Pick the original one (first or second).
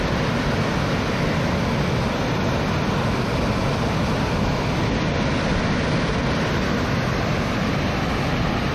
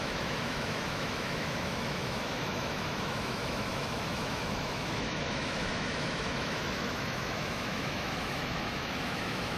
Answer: first